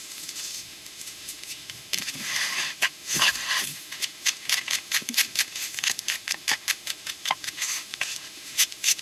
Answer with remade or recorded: remade